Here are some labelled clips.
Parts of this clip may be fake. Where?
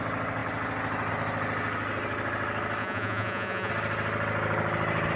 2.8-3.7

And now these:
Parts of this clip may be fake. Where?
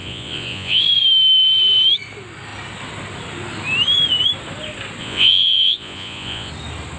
0.0-0.8; 5.0-6.5